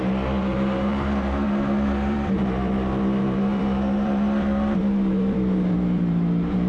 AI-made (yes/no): yes